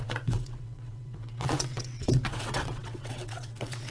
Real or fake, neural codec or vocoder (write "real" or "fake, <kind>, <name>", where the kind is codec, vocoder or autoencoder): fake, vocoder, WaveNeXt